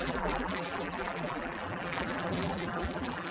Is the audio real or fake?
fake